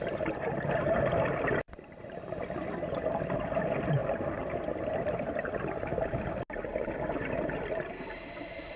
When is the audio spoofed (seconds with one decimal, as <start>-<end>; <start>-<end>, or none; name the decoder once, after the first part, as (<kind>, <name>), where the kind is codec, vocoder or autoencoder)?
4.0-5.2 (vocoder, BigVGAN v2)